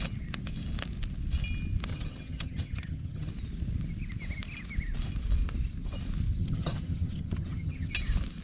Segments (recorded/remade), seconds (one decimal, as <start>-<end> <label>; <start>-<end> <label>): 0.0-1.9 recorded; 1.9-3.3 remade; 3.3-6.4 recorded; 6.4-7.9 remade; 7.9-8.4 recorded